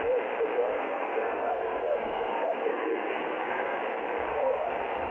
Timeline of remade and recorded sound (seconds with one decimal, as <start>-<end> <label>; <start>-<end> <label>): 0.0-0.7 recorded; 0.7-3.8 remade; 3.8-4.3 recorded; 4.3-5.1 remade